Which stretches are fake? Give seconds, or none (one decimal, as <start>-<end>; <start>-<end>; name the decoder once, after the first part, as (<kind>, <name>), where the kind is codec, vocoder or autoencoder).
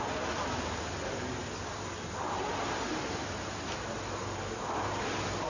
2.9-5.0 (vocoder, BigVGAN v2)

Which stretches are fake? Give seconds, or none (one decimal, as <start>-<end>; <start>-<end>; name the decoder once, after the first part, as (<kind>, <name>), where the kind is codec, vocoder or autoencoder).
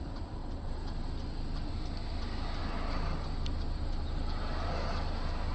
0.4-1.7 (vocoder, BigVGAN v2); 2.6-4.4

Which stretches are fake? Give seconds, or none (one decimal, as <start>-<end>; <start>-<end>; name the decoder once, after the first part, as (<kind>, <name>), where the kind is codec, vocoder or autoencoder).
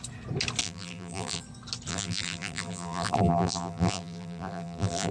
0.6-1.4 (vocoder, BigVGAN v2); 1.9-5.1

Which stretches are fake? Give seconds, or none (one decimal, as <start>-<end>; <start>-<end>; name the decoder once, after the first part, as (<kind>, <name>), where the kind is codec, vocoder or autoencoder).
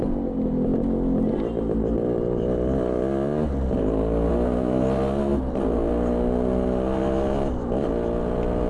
none